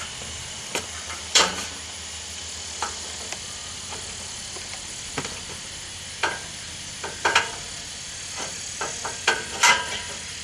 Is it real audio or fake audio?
fake